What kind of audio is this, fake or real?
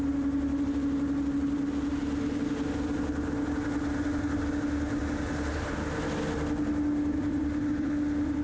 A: real